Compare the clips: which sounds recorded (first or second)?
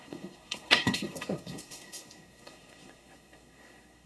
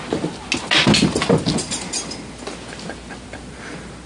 second